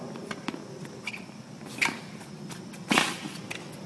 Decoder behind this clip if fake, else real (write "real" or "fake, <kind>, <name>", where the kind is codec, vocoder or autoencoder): real